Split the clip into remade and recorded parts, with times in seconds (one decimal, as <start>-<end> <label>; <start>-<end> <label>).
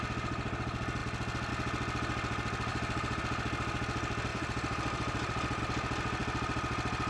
0.0-2.7 recorded; 2.7-3.2 remade; 3.2-4.3 recorded; 4.3-5.6 remade; 5.6-7.1 recorded